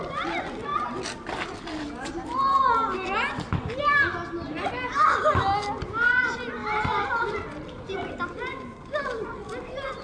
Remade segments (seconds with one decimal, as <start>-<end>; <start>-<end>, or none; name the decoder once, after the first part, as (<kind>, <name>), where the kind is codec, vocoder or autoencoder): none